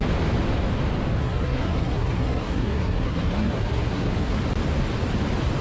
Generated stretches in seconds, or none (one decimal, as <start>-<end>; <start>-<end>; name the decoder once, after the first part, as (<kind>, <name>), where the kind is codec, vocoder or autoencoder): 1.2-4.4 (codec, SNAC)

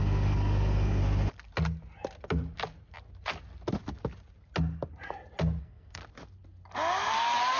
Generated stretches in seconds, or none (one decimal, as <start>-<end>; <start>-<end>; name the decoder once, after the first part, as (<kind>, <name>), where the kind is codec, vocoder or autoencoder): 0.0-1.0 (codec, SNAC); 5.6-6.0

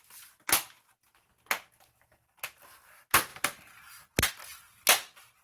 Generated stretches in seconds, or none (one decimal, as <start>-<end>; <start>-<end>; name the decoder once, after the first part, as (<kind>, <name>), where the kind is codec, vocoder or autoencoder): 3.3-4.3 (vocoder, BigVGAN v2)

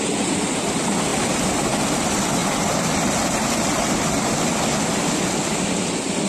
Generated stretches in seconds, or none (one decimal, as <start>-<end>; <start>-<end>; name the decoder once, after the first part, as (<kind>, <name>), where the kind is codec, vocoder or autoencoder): none